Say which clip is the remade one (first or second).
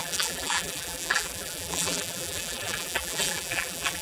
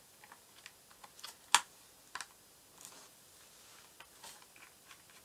first